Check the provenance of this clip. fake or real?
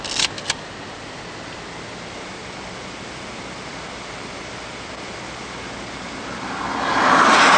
real